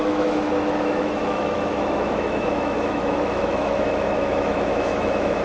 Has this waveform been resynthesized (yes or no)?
yes